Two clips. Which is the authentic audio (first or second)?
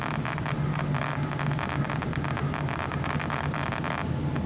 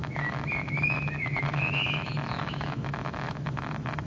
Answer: first